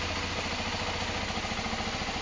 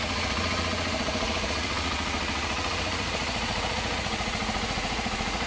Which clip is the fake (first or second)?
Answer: second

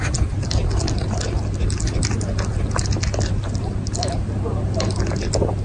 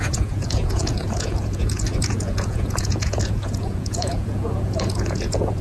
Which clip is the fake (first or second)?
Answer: second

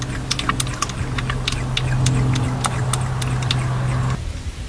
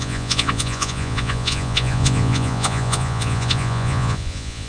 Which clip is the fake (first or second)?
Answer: second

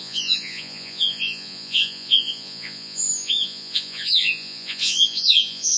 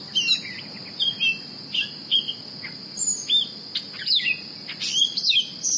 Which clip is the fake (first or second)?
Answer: first